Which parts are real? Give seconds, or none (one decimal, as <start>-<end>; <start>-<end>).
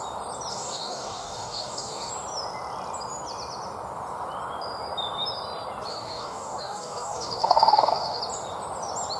0.0-0.5; 2.1-5.9; 8.2-9.2